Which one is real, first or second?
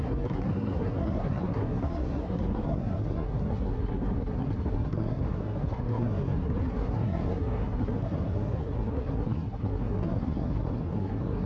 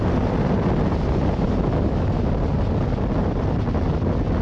second